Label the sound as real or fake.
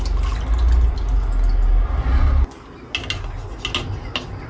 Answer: real